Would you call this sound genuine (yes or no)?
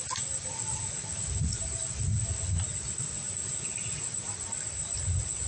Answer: yes